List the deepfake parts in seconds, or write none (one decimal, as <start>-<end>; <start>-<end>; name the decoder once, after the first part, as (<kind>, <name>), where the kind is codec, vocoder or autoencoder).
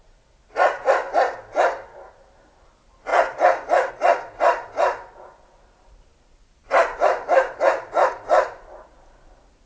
6.1-8.1 (vocoder, BigVGAN v2)